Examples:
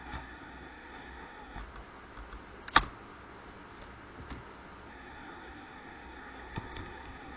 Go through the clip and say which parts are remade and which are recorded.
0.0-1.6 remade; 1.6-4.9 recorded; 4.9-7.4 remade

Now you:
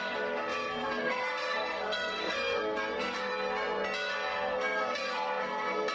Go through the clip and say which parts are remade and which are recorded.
0.0-3.3 remade; 3.3-4.5 recorded; 4.5-5.9 remade

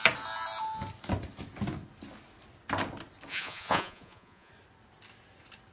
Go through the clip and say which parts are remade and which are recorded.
0.0-3.3 recorded; 3.3-4.5 remade; 4.5-5.7 recorded

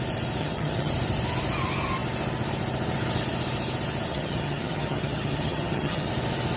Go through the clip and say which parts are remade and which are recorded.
0.0-0.4 recorded; 0.4-0.9 remade; 0.9-4.1 recorded; 4.1-6.1 remade; 6.1-6.6 recorded